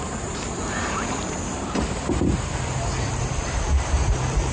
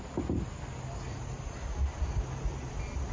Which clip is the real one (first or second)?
second